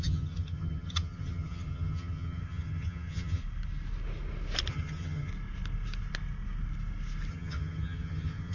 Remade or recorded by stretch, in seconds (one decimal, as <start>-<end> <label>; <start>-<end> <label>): 0.0-3.4 remade; 3.4-4.7 recorded; 4.7-5.3 remade; 5.3-7.3 recorded; 7.3-8.5 remade